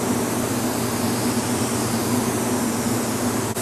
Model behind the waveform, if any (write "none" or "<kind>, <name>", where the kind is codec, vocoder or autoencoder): none